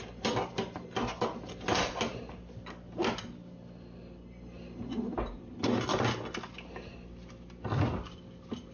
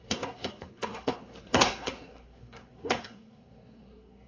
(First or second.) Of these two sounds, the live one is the first